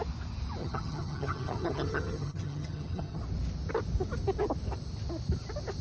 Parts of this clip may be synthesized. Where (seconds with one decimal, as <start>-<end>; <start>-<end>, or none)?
0.6-3.2